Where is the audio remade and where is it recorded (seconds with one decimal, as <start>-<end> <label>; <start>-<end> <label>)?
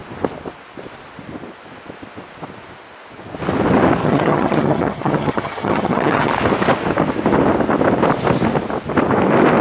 0.0-4.0 recorded; 4.0-6.3 remade; 6.3-9.6 recorded